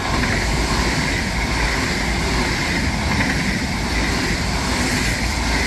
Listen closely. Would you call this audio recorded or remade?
recorded